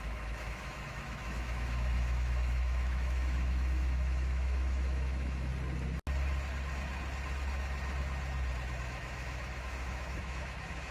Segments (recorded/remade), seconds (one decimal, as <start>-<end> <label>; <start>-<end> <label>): 0.0-5.5 remade; 5.5-8.8 recorded; 8.8-10.9 remade